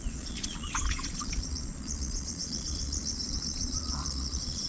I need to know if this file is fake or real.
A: fake